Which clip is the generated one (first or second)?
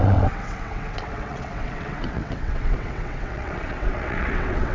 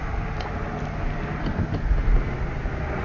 first